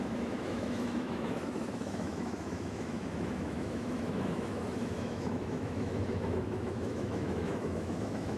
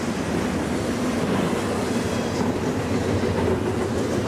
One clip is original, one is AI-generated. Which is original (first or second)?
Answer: second